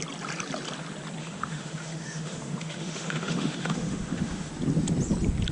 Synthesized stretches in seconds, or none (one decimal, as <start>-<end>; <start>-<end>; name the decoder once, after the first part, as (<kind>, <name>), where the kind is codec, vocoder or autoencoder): 1.2-4.5 (autoencoder, DAC-VAE)